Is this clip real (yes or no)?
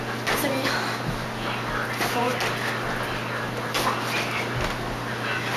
yes